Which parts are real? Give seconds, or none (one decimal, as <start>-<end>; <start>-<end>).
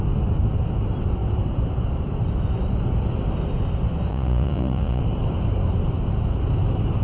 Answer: 0.0-4.1; 5.0-7.0